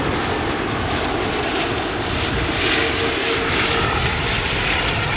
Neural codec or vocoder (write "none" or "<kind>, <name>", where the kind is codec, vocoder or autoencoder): none